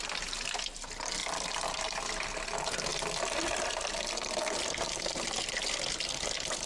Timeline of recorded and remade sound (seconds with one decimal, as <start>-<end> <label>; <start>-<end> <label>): 0.0-1.2 recorded; 1.2-1.8 remade; 1.8-2.9 recorded; 2.9-5.2 remade; 5.2-6.7 recorded